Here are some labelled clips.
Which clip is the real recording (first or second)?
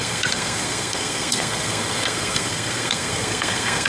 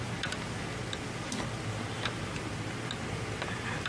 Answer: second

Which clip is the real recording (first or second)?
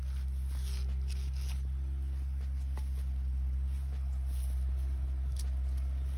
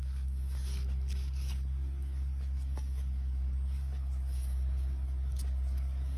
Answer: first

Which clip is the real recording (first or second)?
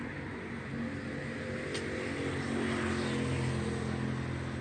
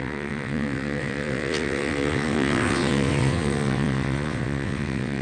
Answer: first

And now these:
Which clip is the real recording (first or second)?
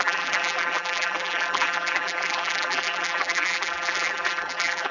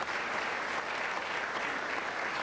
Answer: second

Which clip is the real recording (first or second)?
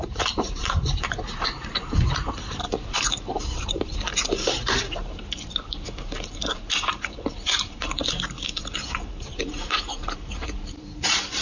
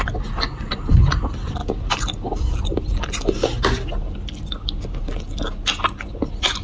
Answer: second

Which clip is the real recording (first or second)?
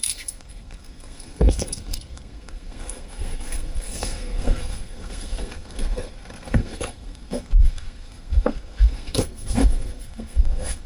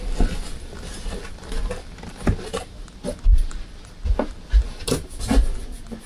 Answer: second